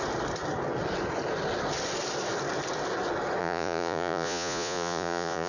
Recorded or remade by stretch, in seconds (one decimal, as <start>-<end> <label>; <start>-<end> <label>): 0.0-3.4 recorded; 3.4-5.5 remade